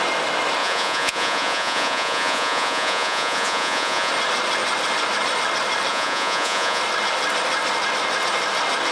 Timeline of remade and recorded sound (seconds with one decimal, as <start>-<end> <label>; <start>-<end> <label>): 0.0-0.6 recorded; 0.6-4.1 remade; 4.1-5.9 recorded; 5.9-6.8 remade; 6.8-8.9 recorded